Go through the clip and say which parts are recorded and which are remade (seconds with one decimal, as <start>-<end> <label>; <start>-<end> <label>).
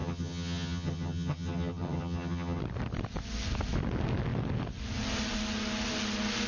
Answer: 0.0-2.6 remade; 2.6-6.5 recorded